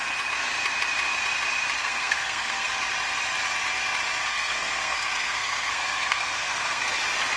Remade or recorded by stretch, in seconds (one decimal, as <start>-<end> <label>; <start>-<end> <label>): 0.0-1.8 recorded; 1.8-2.7 remade; 2.7-4.2 recorded; 4.2-6.9 remade; 6.9-7.4 recorded